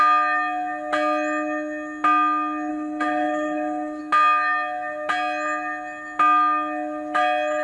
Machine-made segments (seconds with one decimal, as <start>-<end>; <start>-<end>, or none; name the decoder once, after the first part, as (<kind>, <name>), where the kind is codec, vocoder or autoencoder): 2.7-4.0 (codec, SNAC)